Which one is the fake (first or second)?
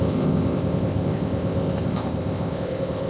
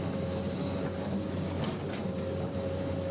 first